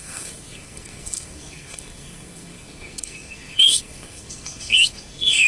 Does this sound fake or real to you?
fake